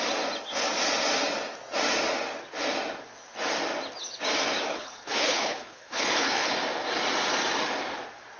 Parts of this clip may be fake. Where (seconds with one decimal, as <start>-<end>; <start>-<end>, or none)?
4.7-6.5